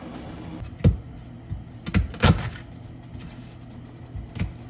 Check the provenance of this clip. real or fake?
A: real